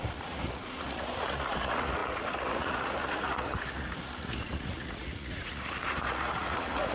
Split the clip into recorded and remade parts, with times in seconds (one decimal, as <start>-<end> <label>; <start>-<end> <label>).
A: 0.0-6.9 remade